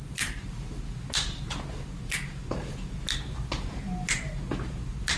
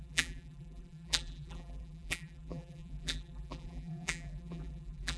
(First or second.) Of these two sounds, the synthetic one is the second